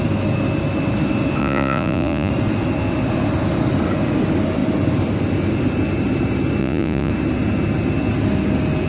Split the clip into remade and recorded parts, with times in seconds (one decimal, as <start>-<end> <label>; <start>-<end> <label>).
0.0-1.4 recorded; 1.4-2.3 remade; 2.3-6.6 recorded; 6.6-7.1 remade; 7.1-8.9 recorded

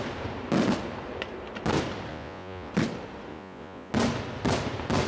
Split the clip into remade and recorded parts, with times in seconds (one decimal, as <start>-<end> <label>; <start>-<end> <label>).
0.0-2.1 recorded; 2.1-2.7 remade; 2.7-3.3 recorded; 3.3-3.9 remade; 3.9-5.1 recorded